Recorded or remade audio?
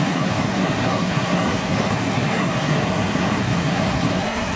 remade